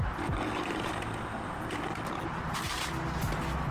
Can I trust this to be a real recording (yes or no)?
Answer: yes